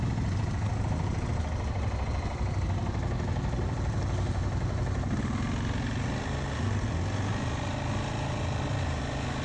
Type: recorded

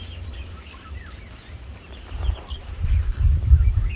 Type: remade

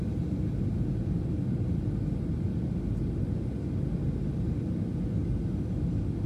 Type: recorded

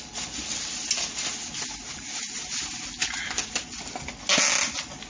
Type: recorded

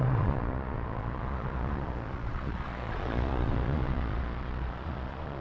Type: remade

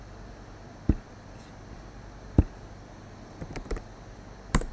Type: recorded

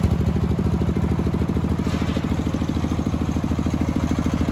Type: recorded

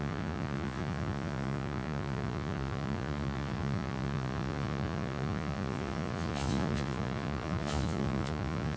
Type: remade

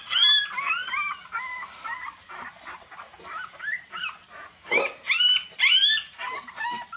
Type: recorded